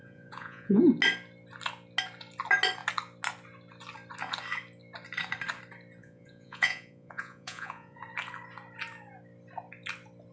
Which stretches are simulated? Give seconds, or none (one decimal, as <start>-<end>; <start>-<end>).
0.0-0.8; 6.0-8.0

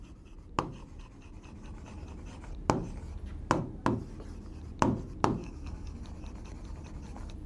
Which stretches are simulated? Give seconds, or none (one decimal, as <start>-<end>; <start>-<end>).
5.4-6.0

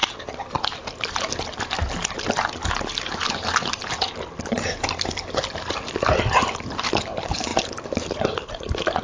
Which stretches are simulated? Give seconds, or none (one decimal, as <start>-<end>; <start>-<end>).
none

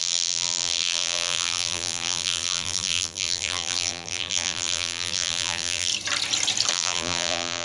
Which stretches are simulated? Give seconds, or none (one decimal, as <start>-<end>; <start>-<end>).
0.0-5.9; 6.7-7.6